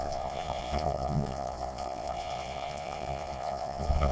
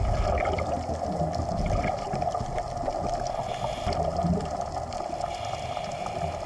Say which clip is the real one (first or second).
second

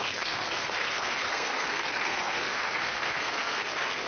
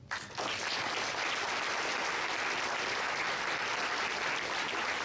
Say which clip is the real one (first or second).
second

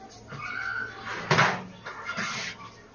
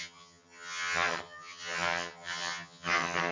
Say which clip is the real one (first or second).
first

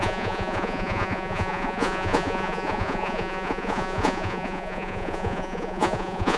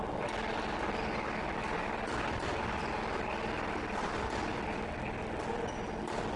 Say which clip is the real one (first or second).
second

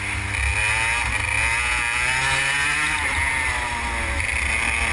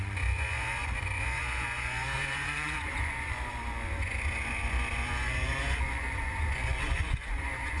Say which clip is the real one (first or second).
first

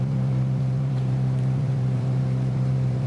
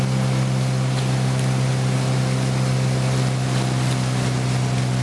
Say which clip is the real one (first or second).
second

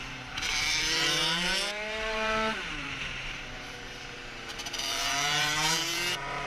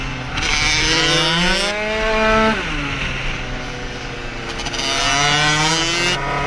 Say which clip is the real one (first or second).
second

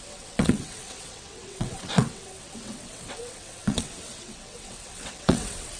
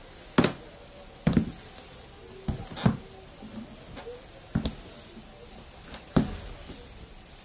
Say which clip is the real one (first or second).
second